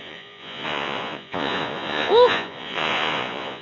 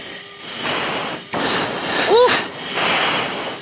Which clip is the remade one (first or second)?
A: first